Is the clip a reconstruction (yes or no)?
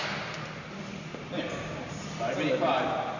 no